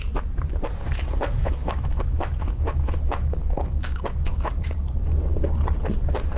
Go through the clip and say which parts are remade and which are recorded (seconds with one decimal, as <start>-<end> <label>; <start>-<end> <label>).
0.0-1.4 recorded; 1.4-4.5 remade; 4.5-6.4 recorded